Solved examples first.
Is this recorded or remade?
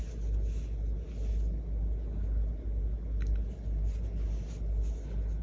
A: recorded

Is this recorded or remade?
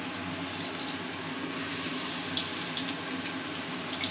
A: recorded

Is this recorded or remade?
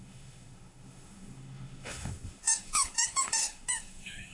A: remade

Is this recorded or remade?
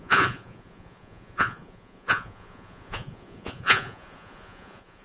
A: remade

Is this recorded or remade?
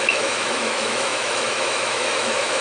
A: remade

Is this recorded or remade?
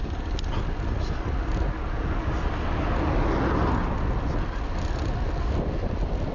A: recorded